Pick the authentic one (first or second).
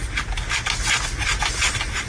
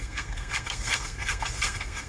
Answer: first